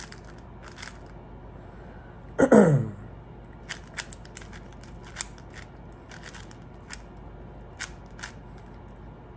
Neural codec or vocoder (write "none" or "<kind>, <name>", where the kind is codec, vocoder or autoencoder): none